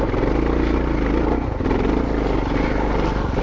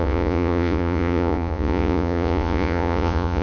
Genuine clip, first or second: first